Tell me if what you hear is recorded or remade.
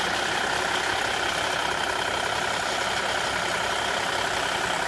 recorded